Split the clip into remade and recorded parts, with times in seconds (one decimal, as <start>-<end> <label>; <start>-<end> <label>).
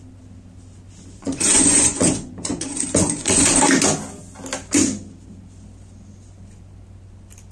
0.0-1.2 recorded; 1.2-3.5 remade; 3.5-7.5 recorded